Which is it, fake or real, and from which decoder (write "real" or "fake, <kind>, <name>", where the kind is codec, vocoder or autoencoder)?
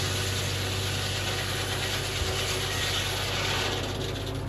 real